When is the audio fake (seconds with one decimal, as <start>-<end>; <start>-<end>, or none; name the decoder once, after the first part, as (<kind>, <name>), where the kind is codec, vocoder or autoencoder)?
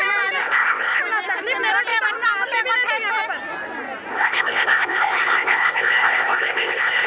0.4-1.0 (codec, ZipCodec); 4.1-7.1